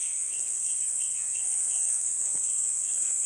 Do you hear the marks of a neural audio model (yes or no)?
yes